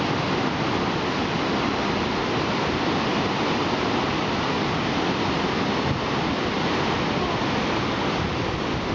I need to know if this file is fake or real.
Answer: real